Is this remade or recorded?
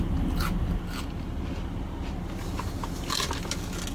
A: recorded